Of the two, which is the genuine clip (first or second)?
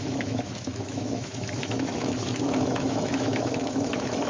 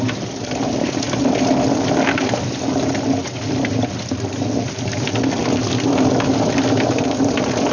second